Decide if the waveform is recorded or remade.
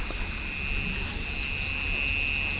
recorded